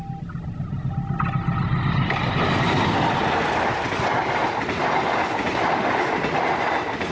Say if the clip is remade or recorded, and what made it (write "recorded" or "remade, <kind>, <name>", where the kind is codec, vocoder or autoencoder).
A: recorded